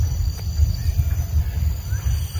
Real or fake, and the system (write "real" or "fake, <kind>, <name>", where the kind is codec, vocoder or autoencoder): real